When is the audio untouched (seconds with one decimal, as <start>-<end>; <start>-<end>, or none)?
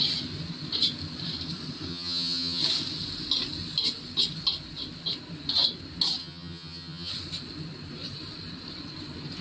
0.0-1.9; 2.6-6.2; 7.1-9.4